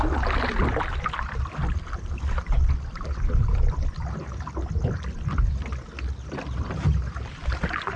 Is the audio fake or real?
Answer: real